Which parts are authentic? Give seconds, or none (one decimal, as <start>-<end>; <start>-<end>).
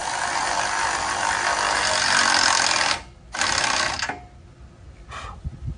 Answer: 0.0-5.8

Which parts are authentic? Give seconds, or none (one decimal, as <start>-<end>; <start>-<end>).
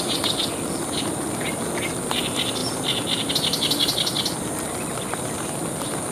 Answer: 0.0-6.1